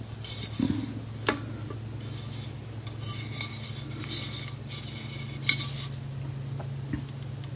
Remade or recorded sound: recorded